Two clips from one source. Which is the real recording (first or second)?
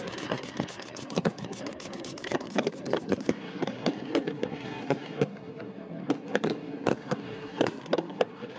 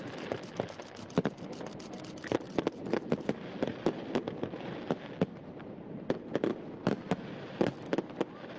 second